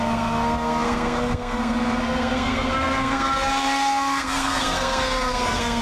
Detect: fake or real fake